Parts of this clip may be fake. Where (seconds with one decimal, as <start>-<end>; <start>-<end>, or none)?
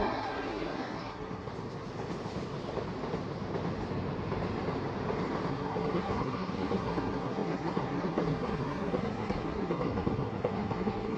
0.0-1.5; 5.5-11.2